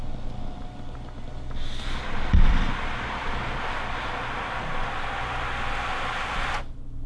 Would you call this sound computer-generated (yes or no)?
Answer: no